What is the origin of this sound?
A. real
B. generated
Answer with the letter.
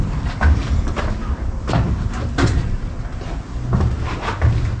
A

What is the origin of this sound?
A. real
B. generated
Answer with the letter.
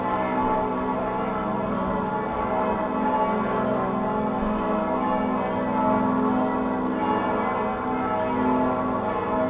A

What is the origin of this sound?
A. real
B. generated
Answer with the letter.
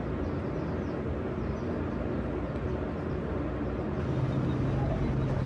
A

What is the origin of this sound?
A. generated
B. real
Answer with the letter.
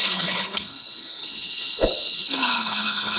A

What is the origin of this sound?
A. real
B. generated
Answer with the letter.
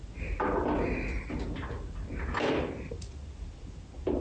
A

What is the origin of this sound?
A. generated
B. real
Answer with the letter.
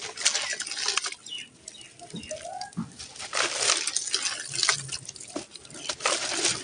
B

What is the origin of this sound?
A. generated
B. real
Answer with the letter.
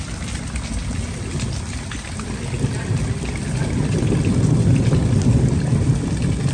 B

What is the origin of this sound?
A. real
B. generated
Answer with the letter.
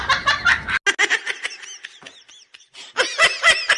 A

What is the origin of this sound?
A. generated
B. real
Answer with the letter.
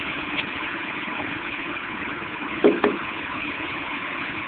A